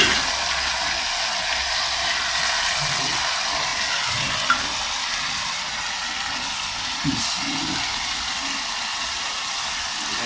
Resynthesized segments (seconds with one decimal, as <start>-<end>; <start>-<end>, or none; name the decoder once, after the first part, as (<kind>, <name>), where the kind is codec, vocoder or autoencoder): 8.9-9.6 (vocoder, Vocos)